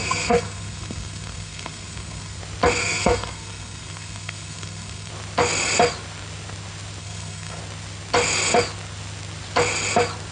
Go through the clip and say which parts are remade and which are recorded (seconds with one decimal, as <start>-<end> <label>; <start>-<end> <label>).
0.0-2.4 remade; 2.4-2.8 recorded; 2.8-5.1 remade; 5.1-7.0 recorded; 7.0-7.6 remade; 7.6-10.3 recorded